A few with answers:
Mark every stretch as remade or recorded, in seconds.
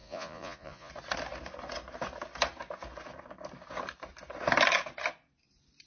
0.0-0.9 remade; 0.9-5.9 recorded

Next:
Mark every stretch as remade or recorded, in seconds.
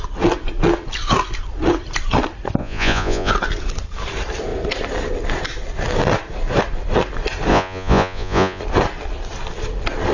0.0-2.6 recorded; 2.6-3.3 remade; 3.3-7.5 recorded; 7.5-8.6 remade; 8.6-10.1 recorded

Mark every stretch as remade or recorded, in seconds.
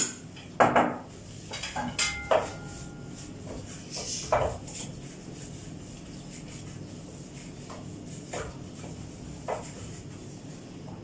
0.0-11.0 recorded